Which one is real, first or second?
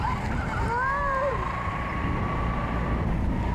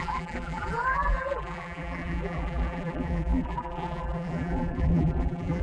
first